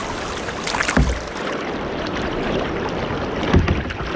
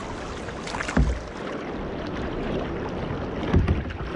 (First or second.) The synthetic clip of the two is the first